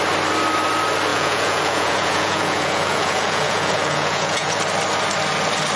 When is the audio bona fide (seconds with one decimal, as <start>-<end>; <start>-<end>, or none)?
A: 0.0-1.1; 4.6-5.8